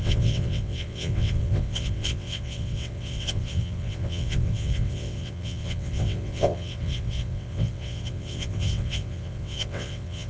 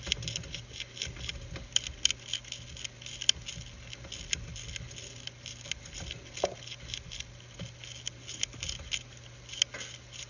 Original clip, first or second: second